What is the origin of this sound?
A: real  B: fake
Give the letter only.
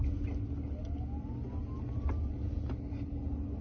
A